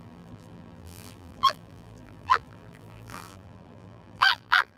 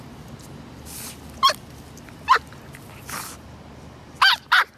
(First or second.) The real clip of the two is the second